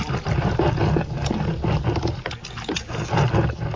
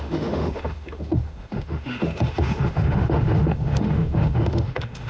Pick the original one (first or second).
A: first